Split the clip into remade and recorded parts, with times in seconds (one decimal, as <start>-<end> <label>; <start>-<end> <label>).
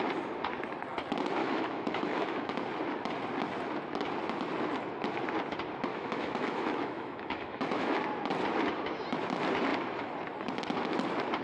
0.0-1.4 recorded; 1.4-2.5 remade; 2.5-5.9 recorded; 5.9-8.0 remade; 8.0-11.4 recorded